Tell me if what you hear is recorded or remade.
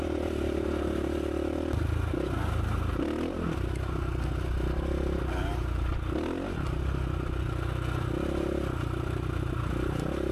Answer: recorded